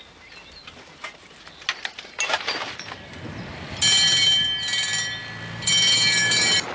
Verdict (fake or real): real